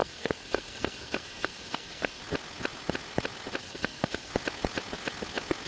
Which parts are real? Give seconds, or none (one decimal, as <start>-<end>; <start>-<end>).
2.2-3.6; 4.3-5.7